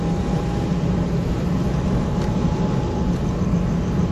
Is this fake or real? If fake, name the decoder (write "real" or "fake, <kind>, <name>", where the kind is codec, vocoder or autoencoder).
fake, vocoder, BigVGAN v2